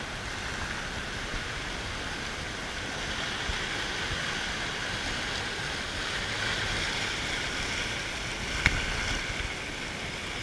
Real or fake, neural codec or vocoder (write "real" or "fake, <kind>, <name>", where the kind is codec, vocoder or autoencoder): real